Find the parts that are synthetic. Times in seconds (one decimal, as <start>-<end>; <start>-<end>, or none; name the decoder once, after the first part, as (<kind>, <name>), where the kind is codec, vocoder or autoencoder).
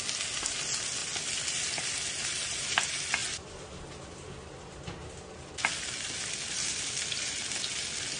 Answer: none